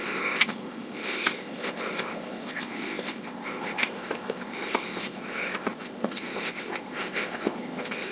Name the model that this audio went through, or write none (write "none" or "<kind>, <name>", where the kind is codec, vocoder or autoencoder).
codec, ZipCodec